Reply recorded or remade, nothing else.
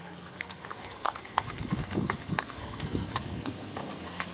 remade